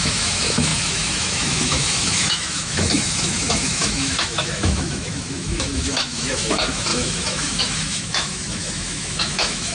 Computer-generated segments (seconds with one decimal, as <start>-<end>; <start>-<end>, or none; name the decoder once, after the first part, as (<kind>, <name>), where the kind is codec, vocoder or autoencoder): 0.0-9.7 (autoencoder, DAC-VAE)